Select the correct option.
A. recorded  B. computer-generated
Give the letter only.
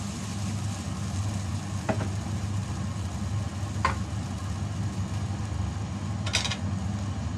A